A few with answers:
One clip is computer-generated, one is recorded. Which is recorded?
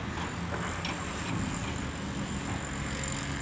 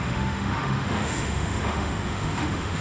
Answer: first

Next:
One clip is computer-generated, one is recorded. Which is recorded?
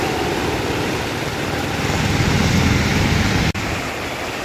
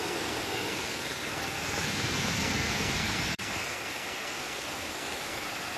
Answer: first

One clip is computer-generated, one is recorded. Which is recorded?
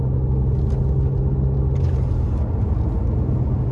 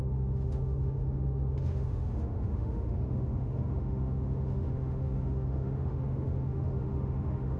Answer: first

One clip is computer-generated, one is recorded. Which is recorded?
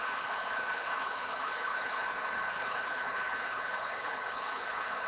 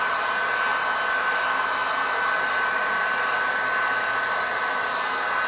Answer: second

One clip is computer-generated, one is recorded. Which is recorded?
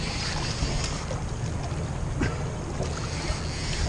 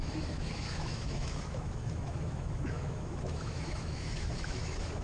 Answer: first